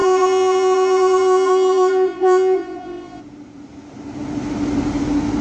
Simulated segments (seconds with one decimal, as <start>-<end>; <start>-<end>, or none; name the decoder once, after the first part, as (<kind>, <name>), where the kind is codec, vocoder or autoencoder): 0.0-3.2 (vocoder, Vocos)